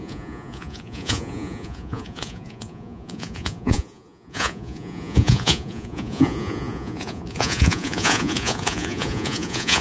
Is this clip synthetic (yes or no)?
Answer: yes